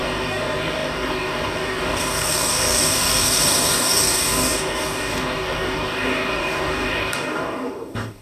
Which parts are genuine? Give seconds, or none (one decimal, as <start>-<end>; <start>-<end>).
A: none